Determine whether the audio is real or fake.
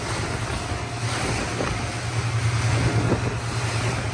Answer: real